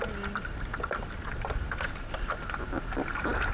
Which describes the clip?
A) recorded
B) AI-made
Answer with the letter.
A